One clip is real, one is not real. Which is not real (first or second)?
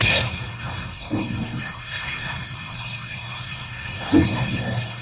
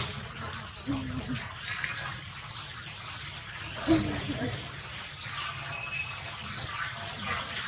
first